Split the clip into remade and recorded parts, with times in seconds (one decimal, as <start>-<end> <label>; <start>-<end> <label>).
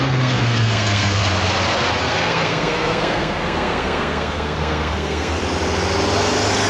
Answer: 0.0-1.2 remade; 1.2-2.0 recorded; 2.0-5.4 remade; 5.4-6.7 recorded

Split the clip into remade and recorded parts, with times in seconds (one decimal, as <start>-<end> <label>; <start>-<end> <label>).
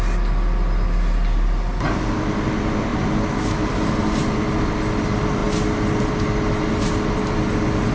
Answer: 0.0-7.9 recorded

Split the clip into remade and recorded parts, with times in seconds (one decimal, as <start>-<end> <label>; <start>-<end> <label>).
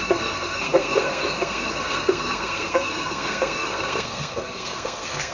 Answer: 0.0-5.3 remade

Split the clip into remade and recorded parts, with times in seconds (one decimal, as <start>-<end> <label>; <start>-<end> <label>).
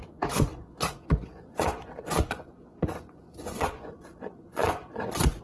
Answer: 0.0-5.4 remade